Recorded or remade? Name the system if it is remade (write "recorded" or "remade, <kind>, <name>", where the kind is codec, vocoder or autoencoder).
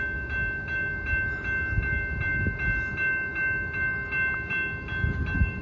recorded